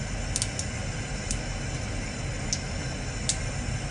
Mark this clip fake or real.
real